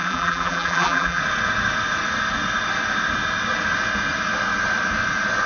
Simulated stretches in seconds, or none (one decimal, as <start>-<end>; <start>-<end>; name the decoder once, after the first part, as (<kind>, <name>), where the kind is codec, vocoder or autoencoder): 0.0-1.2 (vocoder, BigVGAN v2)